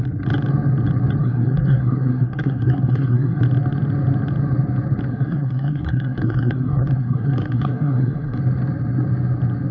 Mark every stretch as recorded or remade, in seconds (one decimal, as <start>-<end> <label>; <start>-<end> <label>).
0.0-1.2 recorded; 1.2-3.4 remade; 3.4-5.1 recorded; 5.1-8.4 remade; 8.4-9.7 recorded